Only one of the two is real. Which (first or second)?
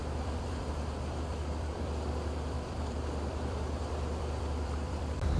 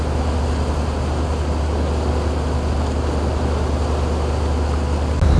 second